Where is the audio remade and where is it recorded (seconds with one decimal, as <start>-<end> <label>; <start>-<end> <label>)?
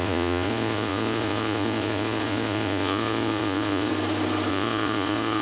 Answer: 0.0-3.9 remade; 3.9-4.5 recorded; 4.5-5.4 remade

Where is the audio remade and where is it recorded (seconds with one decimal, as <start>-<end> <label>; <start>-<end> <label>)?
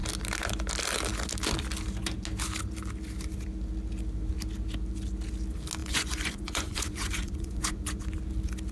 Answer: 0.0-5.8 recorded; 5.8-8.0 remade; 8.0-8.7 recorded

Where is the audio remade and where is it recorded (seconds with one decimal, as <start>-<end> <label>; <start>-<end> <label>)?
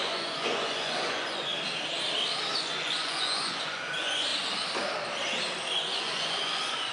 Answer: 0.0-1.5 remade; 1.5-2.5 recorded; 2.5-4.3 remade; 4.3-5.8 recorded; 5.8-6.9 remade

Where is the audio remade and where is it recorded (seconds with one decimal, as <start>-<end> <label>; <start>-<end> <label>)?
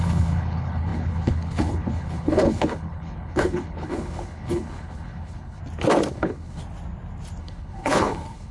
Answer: 0.0-5.6 remade; 5.6-6.1 recorded; 6.1-6.6 remade; 6.6-7.4 recorded; 7.4-8.5 remade